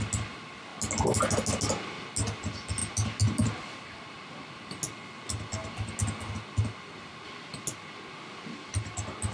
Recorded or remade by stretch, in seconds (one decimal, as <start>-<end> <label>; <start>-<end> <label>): 0.0-9.3 recorded